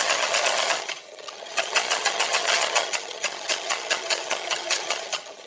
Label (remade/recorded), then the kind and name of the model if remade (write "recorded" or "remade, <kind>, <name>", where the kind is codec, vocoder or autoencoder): remade, vocoder, HiFi-GAN